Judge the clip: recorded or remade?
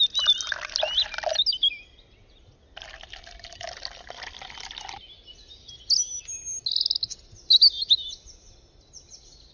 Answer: recorded